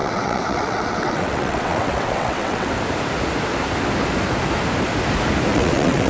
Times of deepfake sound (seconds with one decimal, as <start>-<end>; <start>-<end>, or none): 0.0-2.7; 5.5-6.1